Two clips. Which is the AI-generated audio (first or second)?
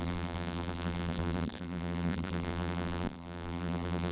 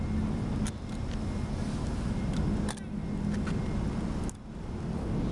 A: first